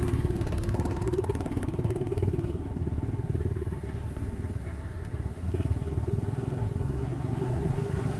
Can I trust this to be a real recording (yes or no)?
no